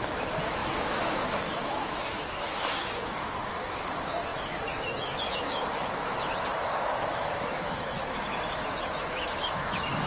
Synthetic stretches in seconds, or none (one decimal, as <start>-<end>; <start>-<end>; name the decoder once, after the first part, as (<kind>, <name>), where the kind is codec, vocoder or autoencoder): 0.0-10.1 (autoencoder, DAC-VAE)